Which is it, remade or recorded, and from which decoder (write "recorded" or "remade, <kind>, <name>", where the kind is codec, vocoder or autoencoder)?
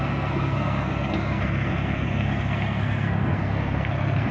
remade, codec, SNAC